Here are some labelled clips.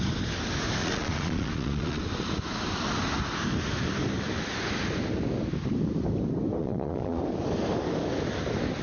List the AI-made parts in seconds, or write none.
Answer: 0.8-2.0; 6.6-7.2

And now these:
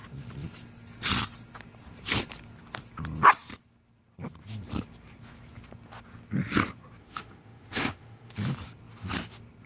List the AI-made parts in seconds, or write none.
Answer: 7.0-8.3

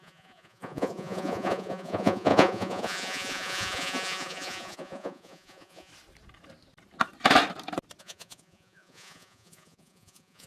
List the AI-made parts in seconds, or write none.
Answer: 0.0-5.9; 8.0-10.5

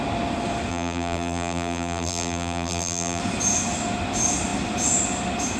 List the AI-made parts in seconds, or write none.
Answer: 0.7-3.2